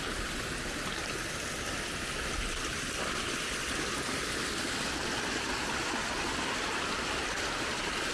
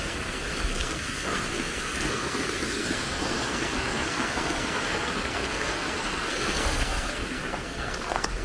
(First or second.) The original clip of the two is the first